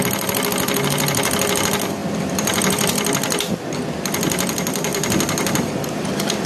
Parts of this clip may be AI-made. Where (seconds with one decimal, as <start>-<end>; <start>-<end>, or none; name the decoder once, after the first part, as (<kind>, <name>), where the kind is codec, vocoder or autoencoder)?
2.0-3.5 (vocoder, BigVGAN v2); 4.9-6.5